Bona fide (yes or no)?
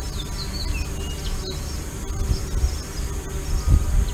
yes